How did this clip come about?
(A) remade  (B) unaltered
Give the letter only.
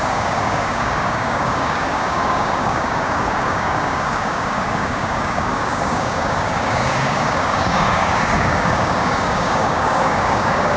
A